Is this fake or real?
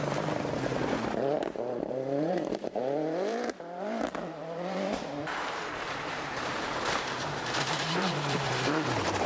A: fake